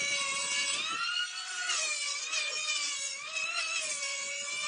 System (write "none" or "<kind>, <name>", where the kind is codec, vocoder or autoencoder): vocoder, Vocos